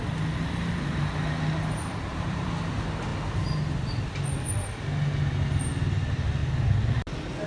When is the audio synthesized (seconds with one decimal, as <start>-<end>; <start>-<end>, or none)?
2.1-2.7